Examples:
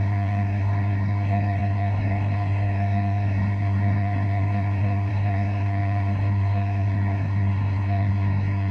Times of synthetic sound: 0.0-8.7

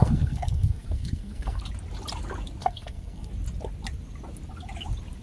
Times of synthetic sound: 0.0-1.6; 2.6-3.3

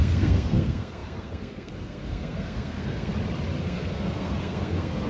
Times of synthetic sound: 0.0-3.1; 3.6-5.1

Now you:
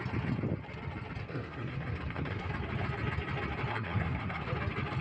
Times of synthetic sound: 1.2-2.5; 3.7-4.4